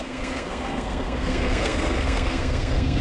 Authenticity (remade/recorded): remade